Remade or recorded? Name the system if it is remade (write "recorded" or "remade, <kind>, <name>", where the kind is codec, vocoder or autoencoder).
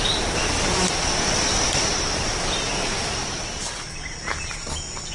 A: recorded